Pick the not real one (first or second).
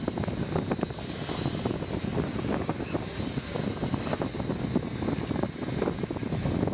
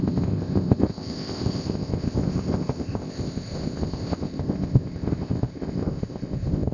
second